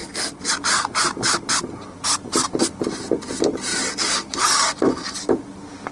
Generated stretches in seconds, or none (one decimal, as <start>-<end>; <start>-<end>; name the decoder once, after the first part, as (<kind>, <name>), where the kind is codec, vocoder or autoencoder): none